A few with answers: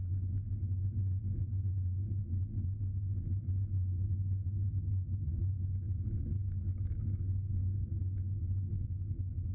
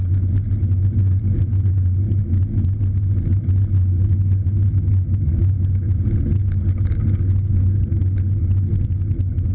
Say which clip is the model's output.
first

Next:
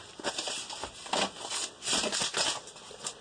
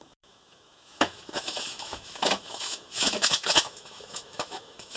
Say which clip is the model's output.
second